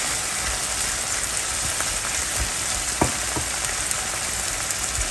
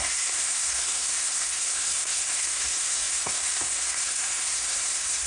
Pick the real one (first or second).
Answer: first